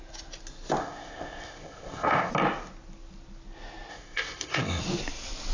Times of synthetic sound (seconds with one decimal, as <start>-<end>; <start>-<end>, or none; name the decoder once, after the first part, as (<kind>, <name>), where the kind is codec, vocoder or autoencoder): 0.8-2.3 (codec, ZipCodec); 3.9-4.8